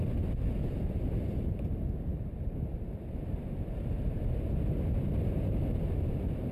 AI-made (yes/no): no